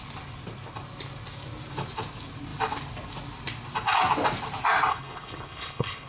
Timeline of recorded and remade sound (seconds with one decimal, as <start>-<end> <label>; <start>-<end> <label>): 0.0-4.9 recorded; 4.9-6.1 remade